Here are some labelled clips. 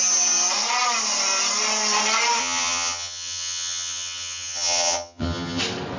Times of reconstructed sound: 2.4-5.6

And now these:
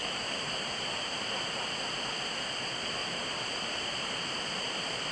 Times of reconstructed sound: 0.0-1.2; 3.0-4.4